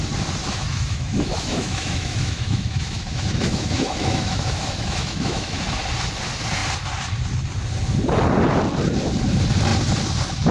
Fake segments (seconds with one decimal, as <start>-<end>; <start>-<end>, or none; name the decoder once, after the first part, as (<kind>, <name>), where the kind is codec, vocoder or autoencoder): 0.4-5.6 (autoencoder, DAC-VAE)